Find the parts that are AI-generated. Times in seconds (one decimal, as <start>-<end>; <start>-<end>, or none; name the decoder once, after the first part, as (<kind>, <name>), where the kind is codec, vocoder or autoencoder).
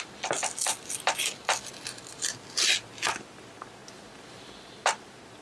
none